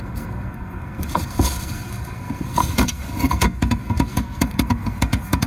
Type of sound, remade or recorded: remade